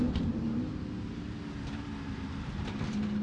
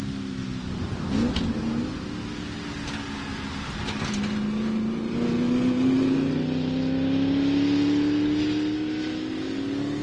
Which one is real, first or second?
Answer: second